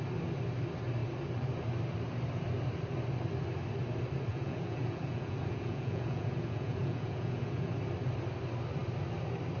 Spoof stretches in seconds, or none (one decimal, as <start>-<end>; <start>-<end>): 4.3-7.7

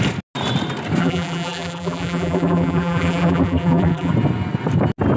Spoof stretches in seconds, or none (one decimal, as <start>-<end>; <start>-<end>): 1.0-4.1

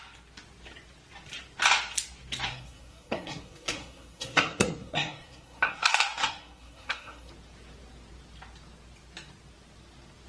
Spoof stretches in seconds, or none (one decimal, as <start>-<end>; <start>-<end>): 2.5-7.3

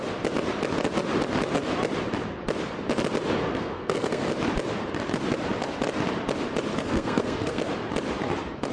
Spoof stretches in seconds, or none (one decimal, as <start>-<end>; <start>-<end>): 3.4-4.3; 6.7-7.6

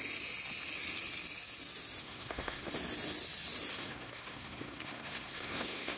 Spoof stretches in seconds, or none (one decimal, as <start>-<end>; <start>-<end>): 2.0-2.7; 3.7-6.0